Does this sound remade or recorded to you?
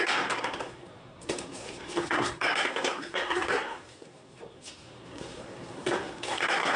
remade